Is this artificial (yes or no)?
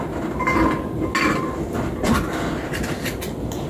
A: no